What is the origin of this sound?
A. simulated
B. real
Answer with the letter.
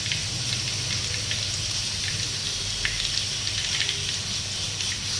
B